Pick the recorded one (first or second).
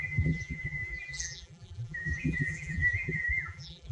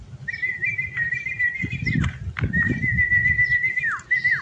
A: second